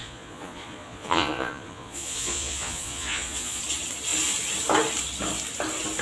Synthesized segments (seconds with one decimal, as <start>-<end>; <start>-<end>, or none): 0.0-3.6